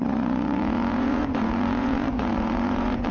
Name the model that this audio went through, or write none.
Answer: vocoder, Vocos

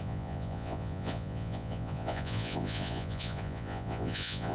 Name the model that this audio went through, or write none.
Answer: vocoder, Vocos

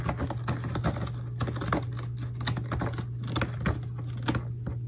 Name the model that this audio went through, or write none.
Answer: none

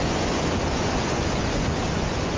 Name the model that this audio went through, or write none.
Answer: vocoder, Vocos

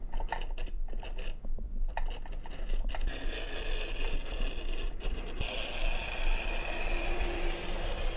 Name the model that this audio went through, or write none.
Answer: none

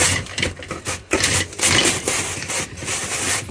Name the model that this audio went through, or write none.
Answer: none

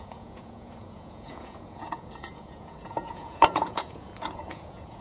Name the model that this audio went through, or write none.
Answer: vocoder, Vocos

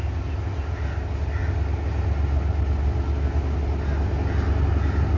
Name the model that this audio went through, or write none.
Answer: none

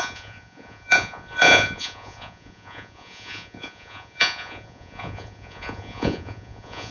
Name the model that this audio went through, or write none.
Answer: vocoder, Vocos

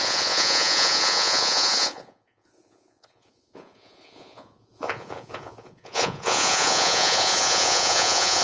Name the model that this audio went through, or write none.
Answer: vocoder, Vocos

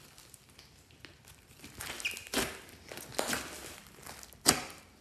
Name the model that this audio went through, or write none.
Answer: none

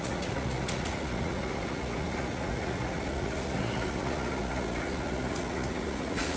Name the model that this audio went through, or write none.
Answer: vocoder, Vocos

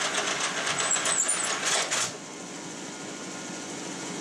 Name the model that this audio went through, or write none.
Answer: vocoder, Vocos